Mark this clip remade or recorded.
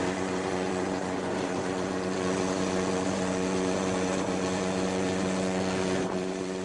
remade